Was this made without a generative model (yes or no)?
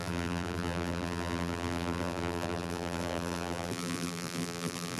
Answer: no